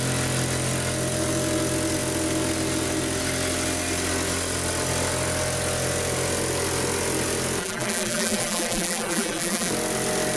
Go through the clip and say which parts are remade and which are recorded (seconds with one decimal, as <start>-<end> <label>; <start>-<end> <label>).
0.0-7.6 recorded; 7.6-9.7 remade; 9.7-10.4 recorded